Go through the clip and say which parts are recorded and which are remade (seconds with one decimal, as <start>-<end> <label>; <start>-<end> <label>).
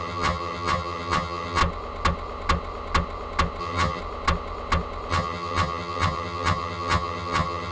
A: 0.0-1.6 remade; 1.6-3.6 recorded; 3.6-4.0 remade; 4.0-5.1 recorded; 5.1-7.7 remade